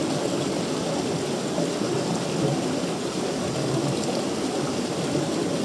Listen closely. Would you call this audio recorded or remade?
recorded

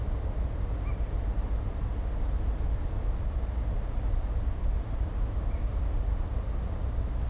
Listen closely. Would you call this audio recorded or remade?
recorded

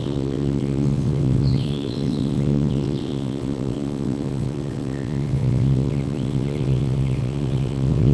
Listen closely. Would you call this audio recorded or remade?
remade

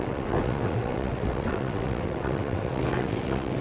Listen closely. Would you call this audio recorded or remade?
remade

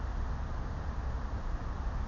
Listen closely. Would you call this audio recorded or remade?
recorded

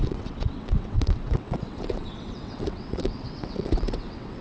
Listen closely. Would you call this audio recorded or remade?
remade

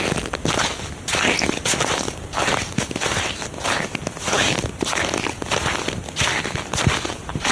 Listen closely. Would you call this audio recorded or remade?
recorded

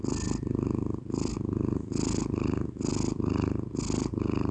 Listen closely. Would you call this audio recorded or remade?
recorded